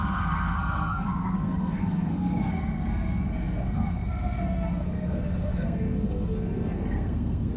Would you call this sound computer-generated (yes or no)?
yes